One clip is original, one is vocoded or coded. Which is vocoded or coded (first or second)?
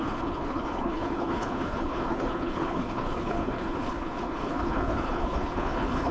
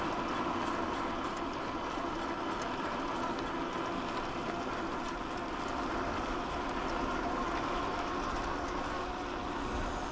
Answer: first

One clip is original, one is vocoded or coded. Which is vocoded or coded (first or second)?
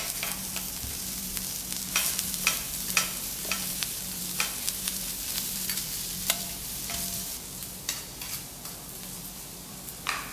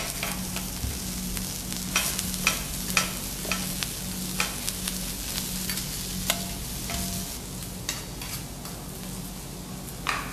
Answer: first